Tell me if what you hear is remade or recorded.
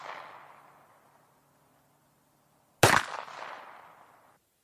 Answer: recorded